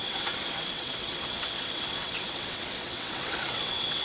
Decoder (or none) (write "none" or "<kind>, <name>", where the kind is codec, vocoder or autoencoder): vocoder, WaveNeXt